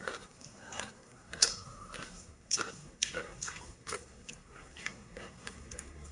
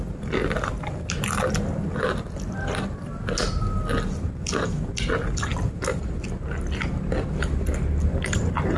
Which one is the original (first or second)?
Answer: second